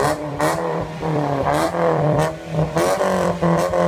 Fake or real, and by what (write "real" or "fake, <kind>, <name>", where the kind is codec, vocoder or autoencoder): fake, vocoder, BigVGAN v2